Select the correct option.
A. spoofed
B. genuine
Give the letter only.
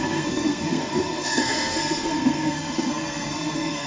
A